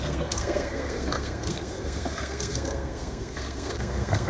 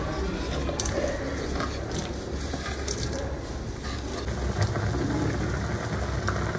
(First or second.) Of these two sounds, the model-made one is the first